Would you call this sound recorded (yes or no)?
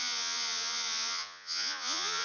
no